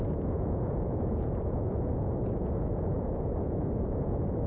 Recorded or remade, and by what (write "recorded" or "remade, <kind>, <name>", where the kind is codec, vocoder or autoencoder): remade, vocoder, Vocos